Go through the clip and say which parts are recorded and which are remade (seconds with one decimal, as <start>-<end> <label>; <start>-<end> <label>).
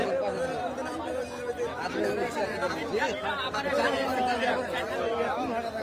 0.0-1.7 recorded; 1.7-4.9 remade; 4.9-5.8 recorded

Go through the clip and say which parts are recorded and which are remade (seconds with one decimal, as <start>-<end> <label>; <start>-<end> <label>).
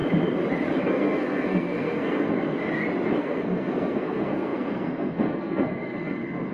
0.0-0.8 recorded; 0.8-2.6 remade; 2.6-3.2 recorded; 3.2-6.5 remade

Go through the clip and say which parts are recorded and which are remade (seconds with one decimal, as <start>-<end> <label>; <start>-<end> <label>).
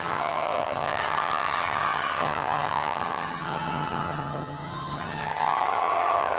0.0-6.4 remade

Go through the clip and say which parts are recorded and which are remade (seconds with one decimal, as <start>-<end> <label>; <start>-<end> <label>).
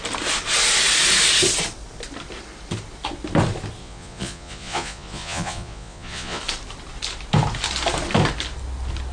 0.0-3.8 recorded; 3.8-6.4 remade; 6.4-9.1 recorded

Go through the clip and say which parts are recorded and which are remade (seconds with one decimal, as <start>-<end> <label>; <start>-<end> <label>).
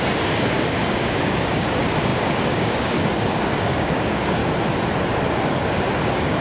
0.0-4.4 remade; 4.4-5.5 recorded; 5.5-6.4 remade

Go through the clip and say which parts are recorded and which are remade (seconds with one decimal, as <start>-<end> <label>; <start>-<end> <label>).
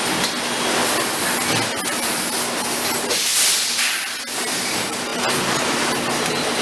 0.0-6.6 recorded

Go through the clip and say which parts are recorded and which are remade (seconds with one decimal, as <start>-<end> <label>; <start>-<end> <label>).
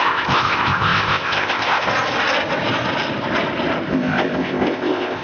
0.0-1.9 remade; 1.9-3.9 recorded; 3.9-5.2 remade